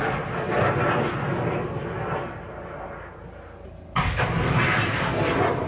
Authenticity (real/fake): real